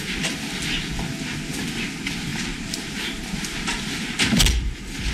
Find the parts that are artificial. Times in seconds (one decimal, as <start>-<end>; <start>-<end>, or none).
2.3-3.8